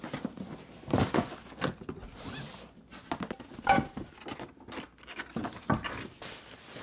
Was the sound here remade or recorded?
recorded